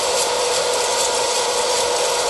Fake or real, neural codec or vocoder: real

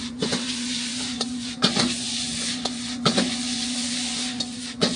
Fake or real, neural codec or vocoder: fake, vocoder, Vocos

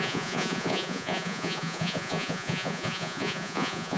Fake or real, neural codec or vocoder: fake, vocoder, Vocos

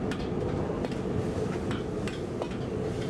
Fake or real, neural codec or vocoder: real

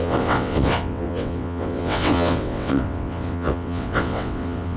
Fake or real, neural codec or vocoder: fake, vocoder, WaveNeXt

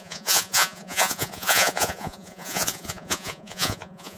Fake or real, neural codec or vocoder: fake, vocoder, Vocos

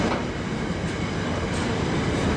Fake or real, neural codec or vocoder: real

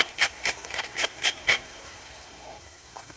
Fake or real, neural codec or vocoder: fake, codec, SNAC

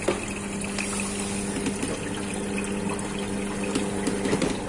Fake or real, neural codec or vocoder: real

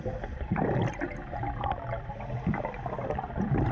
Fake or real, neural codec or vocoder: real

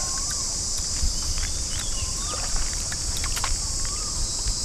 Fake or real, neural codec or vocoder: fake, vocoder, BigVGAN v2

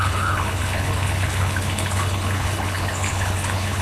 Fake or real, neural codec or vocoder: fake, codec, HILCodec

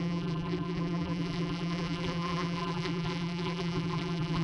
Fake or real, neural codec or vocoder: fake, vocoder, BigVGAN v2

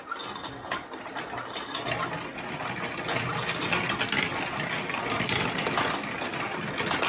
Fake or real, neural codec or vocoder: real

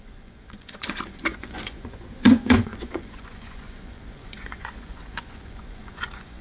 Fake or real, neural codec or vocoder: fake, vocoder, Vocos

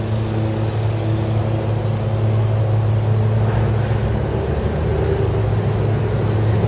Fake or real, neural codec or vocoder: real